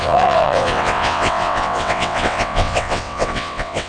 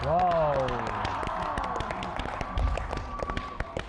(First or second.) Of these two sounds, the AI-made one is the first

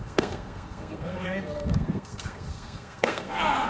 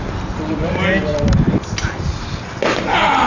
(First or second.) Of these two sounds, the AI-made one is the first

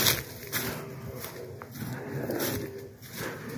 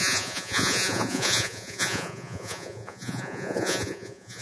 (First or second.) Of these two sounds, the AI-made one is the second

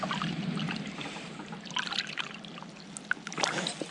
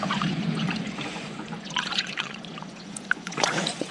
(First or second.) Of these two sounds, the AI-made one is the second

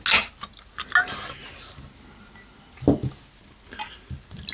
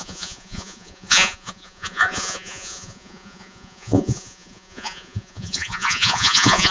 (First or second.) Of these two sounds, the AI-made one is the second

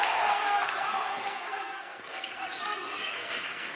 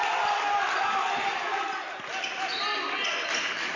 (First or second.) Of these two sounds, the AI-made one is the first